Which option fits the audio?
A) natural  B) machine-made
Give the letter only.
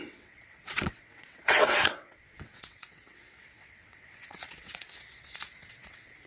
B